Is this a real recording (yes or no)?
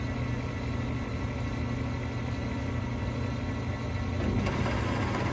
yes